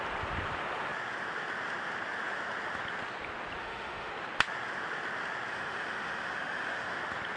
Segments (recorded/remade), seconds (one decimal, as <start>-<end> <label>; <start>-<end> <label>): 0.0-3.6 recorded; 3.6-4.1 remade; 4.1-5.5 recorded; 5.5-7.0 remade; 7.0-7.4 recorded